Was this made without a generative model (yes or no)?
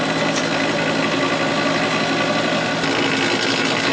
yes